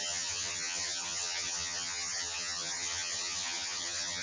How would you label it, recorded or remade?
remade